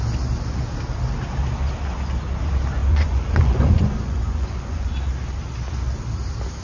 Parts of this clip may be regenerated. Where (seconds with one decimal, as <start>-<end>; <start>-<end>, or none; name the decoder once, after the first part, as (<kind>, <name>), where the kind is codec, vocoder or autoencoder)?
2.8-4.9 (vocoder, Vocos)